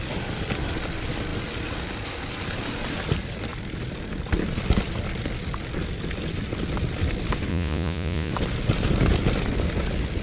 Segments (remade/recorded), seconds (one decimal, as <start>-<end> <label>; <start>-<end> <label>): 0.0-7.5 recorded; 7.5-8.3 remade; 8.3-10.2 recorded